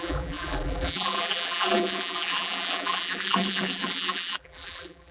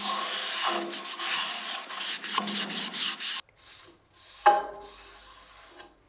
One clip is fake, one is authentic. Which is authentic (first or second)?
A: second